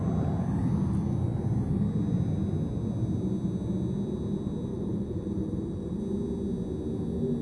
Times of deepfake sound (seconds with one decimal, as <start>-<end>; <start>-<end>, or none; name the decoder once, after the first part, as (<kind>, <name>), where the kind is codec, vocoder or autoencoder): 4.7-6.0 (vocoder, BigVGAN v2)